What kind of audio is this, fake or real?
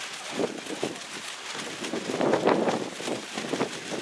real